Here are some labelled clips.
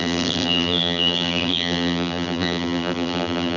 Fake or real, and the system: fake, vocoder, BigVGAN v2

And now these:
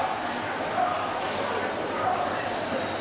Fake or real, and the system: real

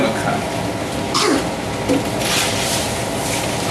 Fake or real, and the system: real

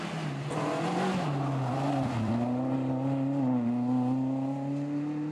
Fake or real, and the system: real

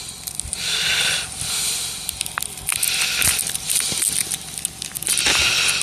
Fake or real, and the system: real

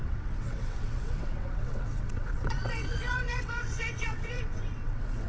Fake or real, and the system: fake, vocoder, WaveNeXt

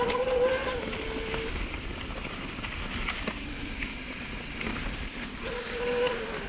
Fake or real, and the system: real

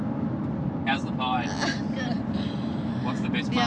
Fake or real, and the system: real